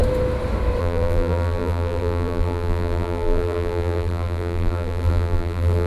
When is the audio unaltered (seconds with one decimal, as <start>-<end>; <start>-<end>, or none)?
0.0-0.8